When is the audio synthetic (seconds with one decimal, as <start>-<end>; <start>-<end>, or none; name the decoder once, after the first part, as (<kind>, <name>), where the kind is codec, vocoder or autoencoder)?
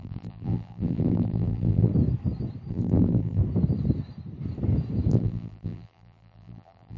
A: 0.0-1.9 (vocoder, BigVGAN v2); 2.7-3.4; 5.1-7.0